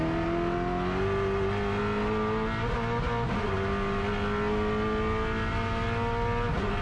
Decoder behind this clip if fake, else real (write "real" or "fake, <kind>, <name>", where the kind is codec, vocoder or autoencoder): real